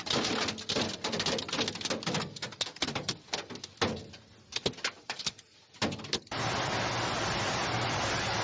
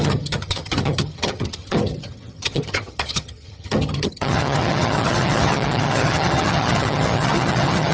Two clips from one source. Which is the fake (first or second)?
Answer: second